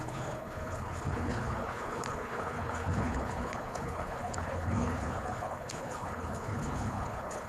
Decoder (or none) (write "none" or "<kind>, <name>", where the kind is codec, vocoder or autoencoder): codec, HILCodec